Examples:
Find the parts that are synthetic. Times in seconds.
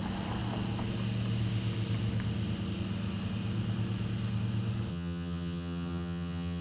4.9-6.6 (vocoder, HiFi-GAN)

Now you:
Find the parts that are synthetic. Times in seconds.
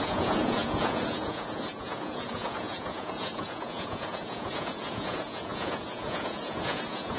0.0-7.2 (vocoder, Vocos)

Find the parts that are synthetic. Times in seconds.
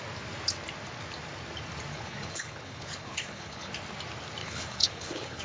1.9-3.7 (codec, HILCodec); 4.4-5.4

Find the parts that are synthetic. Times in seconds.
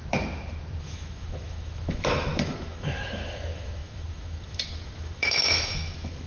0.8-6.3 (autoencoder, DAC-VAE)